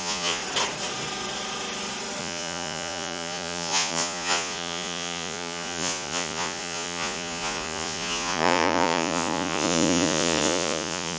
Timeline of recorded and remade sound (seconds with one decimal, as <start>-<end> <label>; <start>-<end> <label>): 0.0-0.4 remade; 0.4-2.2 recorded; 2.2-11.2 remade